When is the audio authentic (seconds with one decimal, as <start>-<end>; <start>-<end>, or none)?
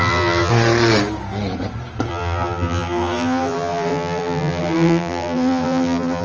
0.5-2.1